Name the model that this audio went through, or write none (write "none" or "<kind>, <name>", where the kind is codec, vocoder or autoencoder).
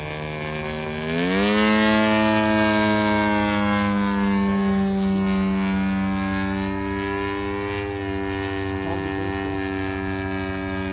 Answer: none